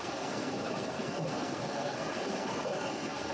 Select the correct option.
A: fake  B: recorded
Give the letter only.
A